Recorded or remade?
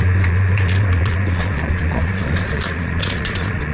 remade